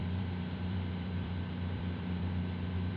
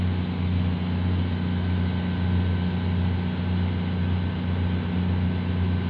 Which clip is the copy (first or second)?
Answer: first